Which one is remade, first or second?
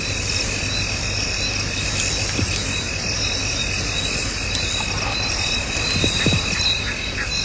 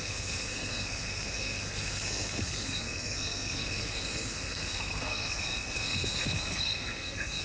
second